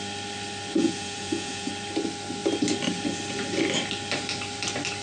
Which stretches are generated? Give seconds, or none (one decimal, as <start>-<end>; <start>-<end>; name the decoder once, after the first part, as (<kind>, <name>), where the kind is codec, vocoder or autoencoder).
0.8-1.7 (vocoder, Vocos)